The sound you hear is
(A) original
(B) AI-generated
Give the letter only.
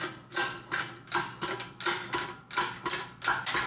A